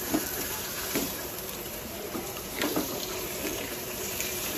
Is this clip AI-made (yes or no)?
yes